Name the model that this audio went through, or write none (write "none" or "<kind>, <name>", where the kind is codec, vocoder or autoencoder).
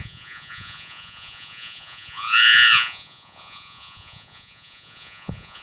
vocoder, Vocos